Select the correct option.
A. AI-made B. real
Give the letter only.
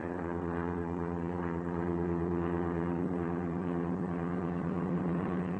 A